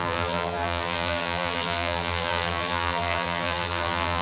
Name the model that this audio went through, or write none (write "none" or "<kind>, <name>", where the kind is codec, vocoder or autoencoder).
vocoder, BigVGAN v2